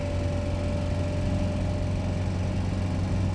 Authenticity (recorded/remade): recorded